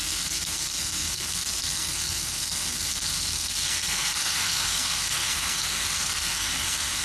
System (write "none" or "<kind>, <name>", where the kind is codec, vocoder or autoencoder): codec, SNAC